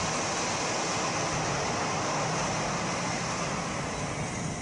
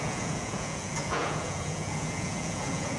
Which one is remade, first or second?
second